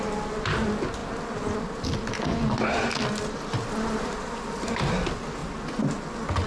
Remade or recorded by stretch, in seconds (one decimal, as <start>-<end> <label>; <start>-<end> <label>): 0.0-6.5 recorded